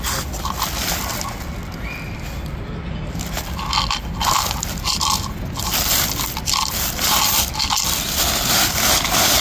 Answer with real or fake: real